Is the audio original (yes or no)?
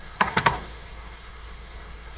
no